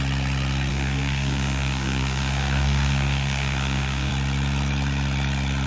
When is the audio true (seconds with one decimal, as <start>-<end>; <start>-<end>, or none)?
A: 0.0-0.7; 4.1-5.7